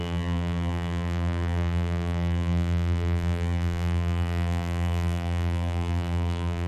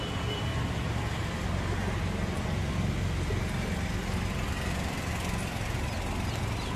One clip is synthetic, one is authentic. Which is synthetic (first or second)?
first